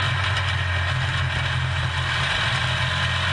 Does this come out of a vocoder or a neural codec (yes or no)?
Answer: no